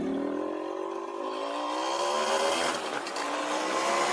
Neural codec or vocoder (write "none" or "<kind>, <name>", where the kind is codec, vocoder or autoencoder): none